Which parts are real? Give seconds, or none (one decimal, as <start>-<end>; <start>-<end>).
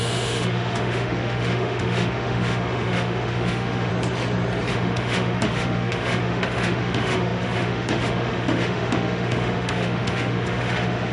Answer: 3.9-4.7